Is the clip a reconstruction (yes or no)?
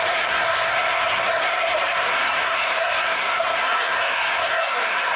yes